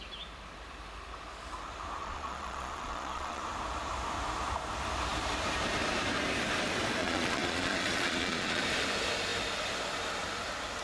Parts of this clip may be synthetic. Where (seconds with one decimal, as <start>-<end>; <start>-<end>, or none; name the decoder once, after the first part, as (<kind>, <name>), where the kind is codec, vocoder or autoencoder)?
2.0-3.4 (vocoder, Vocos); 7.0-8.6